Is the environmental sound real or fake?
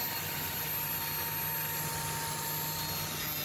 real